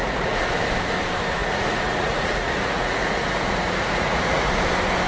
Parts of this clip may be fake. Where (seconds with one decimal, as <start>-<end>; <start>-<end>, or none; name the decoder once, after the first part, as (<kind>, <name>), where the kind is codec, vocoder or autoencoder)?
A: 0.0-0.5 (vocoder, Vocos); 1.4-4.5